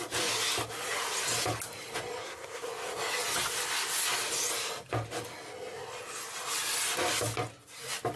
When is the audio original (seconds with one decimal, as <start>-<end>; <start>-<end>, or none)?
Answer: 0.0-2.2; 2.7-8.2